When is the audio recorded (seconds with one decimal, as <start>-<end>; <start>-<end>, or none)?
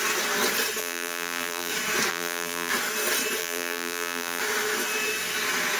0.0-0.8; 1.7-2.1; 2.7-3.4; 4.4-5.8